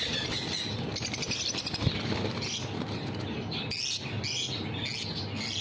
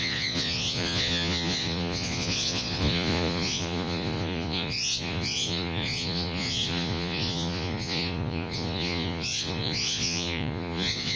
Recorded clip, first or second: first